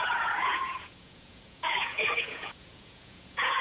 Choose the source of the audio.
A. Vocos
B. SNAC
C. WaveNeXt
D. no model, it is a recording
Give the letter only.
A